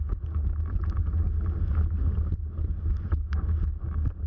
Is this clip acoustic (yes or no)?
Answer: yes